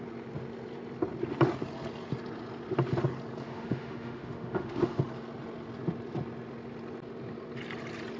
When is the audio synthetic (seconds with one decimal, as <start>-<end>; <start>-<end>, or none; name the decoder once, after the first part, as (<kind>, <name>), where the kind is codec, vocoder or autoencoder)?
3.4-5.0 (autoencoder, DAC-VAE)